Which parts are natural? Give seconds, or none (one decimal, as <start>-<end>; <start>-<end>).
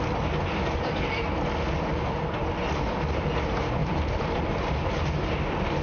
0.0-3.8; 5.3-5.8